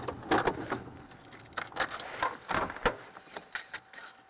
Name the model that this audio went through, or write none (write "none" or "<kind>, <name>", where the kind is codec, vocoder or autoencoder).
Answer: none